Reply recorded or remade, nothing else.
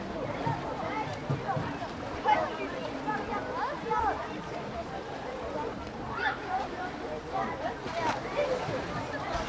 remade